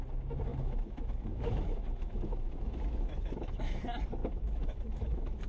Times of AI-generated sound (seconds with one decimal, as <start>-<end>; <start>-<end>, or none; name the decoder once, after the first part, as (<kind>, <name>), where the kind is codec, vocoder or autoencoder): 0.5-3.8 (autoencoder, DAC-VAE); 4.2-5.5

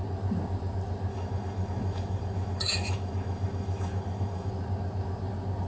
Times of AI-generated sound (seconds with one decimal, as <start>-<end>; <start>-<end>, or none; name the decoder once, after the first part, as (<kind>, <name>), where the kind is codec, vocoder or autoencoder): 1.1-4.5 (autoencoder, DAC-VAE)

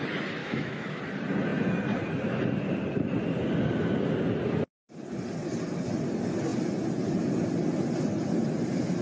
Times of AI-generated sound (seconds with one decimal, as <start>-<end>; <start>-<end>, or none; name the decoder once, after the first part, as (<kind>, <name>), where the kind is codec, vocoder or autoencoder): 0.4-1.0 (autoencoder, DAC-VAE)

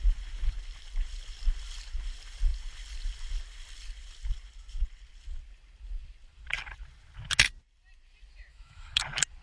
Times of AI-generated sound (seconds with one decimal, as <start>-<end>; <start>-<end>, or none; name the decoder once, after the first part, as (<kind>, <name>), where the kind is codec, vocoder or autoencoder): 8.5-9.0 (autoencoder, DAC-VAE)

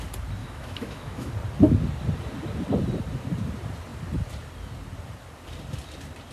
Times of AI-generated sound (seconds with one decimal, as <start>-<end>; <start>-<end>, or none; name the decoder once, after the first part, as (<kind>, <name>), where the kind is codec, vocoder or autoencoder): 0.4-1.3 (autoencoder, DAC-VAE)

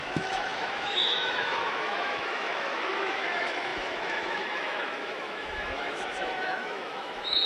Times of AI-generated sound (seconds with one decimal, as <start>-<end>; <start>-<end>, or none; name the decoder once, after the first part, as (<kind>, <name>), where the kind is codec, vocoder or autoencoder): 0.0-7.5 (autoencoder, DAC-VAE)

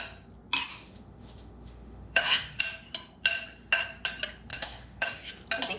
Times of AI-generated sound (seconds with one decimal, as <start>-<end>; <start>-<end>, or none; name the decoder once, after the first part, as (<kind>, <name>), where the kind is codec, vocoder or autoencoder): 0.7-2.6 (autoencoder, DAC-VAE); 4.5-5.3

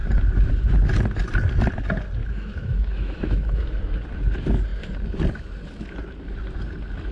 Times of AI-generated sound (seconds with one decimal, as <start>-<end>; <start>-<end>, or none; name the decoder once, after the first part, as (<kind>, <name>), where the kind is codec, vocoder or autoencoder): 2.2-3.8 (autoencoder, DAC-VAE)